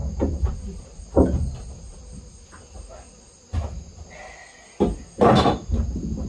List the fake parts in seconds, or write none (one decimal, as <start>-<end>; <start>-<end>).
none